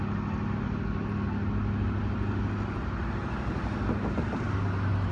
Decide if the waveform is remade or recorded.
recorded